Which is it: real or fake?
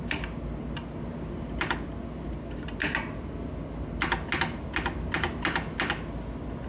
real